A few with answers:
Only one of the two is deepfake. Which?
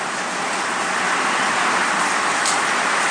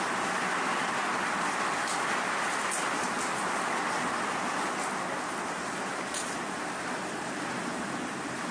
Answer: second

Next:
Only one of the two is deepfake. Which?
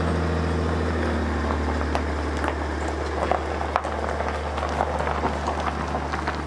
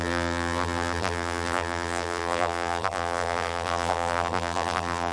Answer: second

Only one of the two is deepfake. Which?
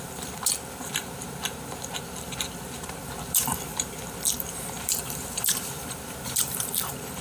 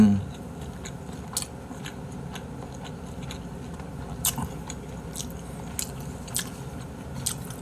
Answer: first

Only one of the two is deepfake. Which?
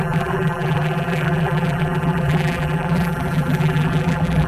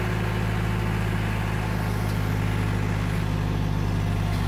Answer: first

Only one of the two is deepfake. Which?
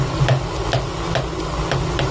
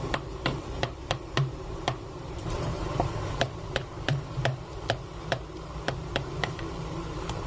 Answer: second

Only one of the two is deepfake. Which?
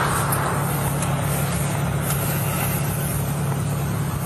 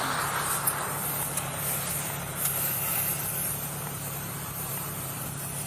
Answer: second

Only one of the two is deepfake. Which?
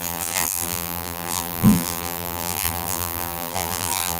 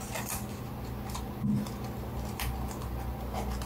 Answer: first